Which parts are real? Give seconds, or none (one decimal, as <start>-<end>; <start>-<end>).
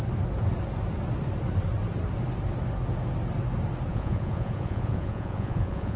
0.0-3.9